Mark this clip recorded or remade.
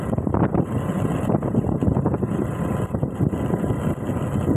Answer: recorded